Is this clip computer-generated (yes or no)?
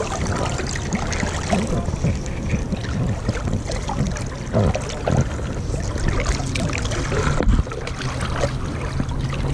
no